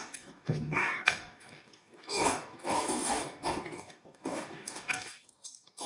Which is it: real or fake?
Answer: fake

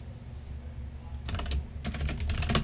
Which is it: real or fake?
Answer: real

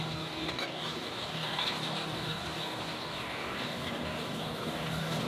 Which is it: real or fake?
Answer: fake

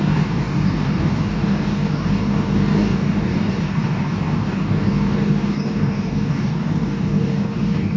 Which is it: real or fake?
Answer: fake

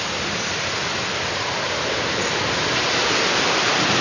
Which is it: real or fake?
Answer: real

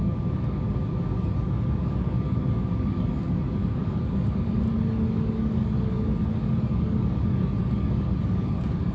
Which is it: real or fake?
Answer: fake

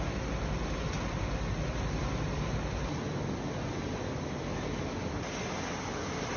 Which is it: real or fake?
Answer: real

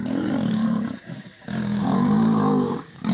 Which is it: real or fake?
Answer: fake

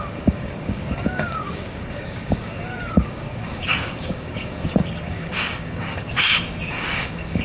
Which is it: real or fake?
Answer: fake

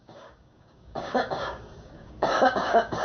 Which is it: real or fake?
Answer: fake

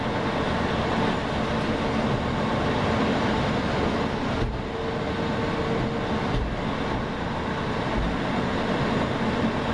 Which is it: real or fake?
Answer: real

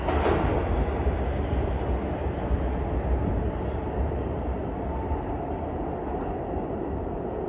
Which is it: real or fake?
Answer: real